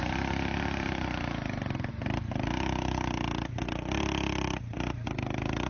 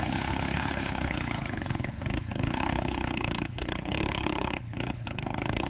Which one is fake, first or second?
second